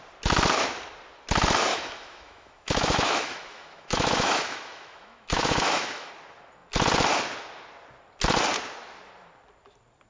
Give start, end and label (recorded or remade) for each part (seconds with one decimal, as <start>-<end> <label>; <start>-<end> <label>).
0.0-1.7 recorded; 1.7-6.1 remade; 6.1-10.1 recorded